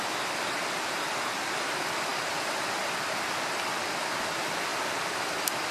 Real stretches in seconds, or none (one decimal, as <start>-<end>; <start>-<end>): 0.0-5.7